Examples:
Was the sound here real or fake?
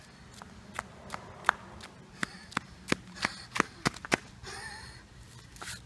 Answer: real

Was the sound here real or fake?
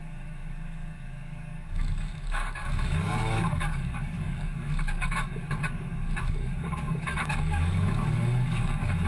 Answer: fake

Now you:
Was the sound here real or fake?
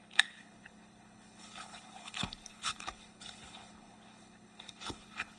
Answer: fake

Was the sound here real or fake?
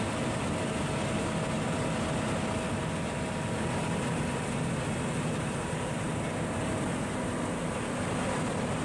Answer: real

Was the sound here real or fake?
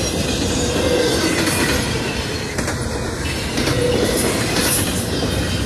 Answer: real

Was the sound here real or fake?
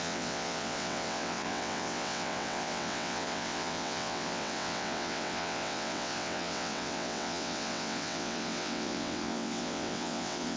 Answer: fake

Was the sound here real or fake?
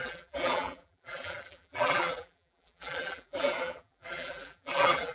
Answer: fake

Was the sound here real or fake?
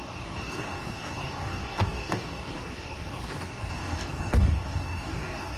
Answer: fake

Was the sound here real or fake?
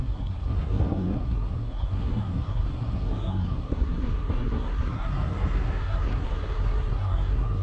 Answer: fake